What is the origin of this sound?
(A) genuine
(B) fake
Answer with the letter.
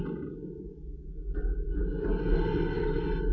A